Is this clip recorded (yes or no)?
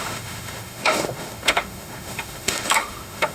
no